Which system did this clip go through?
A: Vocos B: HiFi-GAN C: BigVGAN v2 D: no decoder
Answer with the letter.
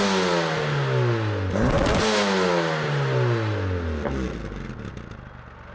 D